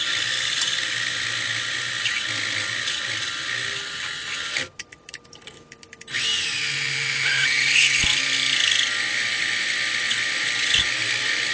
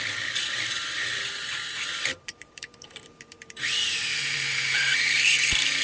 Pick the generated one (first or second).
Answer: second